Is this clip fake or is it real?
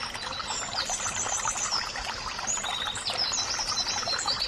fake